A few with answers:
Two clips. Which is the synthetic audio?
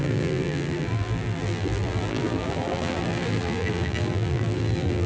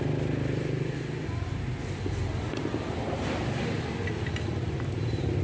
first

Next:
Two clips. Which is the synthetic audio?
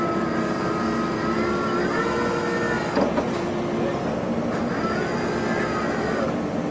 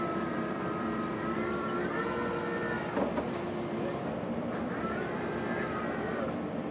second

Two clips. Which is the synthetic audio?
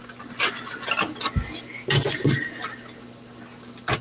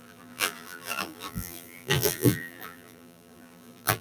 second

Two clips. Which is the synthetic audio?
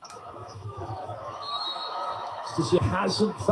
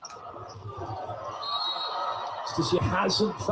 first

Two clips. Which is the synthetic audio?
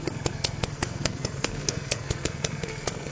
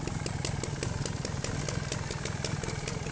first